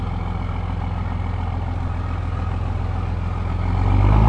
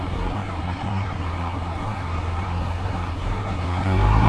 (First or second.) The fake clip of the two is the second